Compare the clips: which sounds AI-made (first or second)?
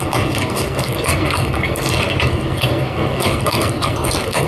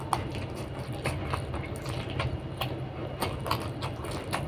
first